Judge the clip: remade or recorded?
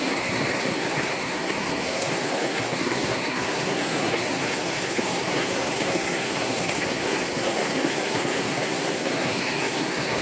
remade